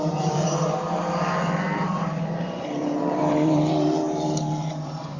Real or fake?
fake